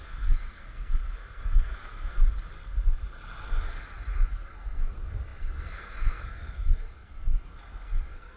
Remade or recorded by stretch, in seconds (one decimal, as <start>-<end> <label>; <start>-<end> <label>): 0.0-2.2 remade; 2.2-4.3 recorded; 4.3-8.4 remade